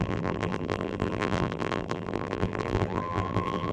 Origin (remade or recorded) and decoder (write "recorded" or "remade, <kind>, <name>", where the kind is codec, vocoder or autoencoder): remade, vocoder, BigVGAN v2